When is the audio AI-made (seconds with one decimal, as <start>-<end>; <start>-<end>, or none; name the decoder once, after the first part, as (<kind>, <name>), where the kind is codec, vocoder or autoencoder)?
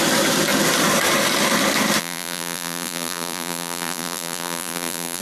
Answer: 2.0-5.2 (vocoder, BigVGAN v2)